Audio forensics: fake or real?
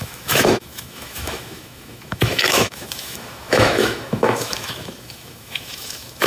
fake